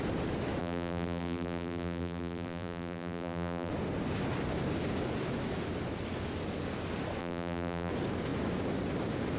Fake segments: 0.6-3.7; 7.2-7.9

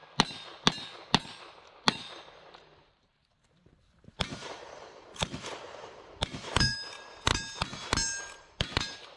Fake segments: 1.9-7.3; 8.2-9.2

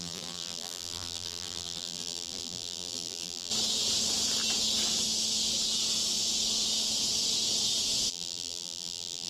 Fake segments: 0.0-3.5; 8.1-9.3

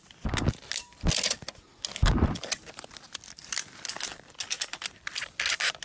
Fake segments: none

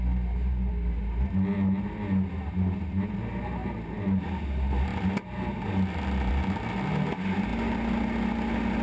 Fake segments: none